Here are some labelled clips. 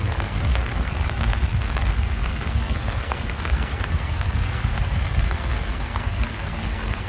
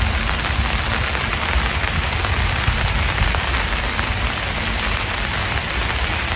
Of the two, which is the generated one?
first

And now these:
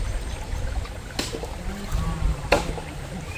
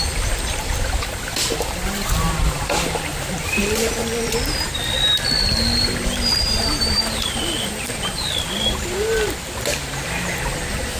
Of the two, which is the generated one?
second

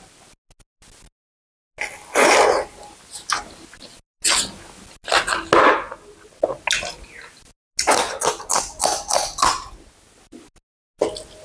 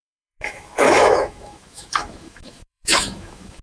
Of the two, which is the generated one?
second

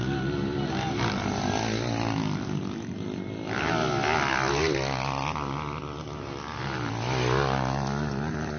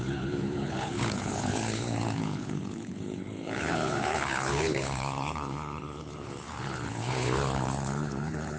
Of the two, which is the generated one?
second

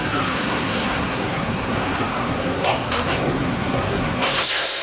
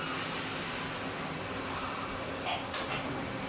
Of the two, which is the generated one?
first